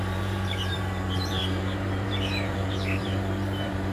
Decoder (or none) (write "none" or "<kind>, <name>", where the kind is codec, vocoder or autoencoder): vocoder, BigVGAN v2